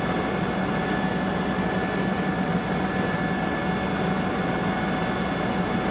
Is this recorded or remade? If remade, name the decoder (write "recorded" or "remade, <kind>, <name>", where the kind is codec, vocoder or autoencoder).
recorded